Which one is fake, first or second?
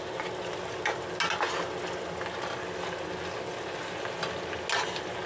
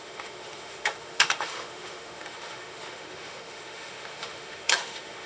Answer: second